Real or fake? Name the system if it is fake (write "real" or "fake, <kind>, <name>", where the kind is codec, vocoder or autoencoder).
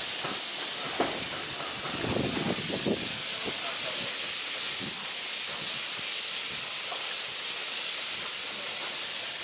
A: real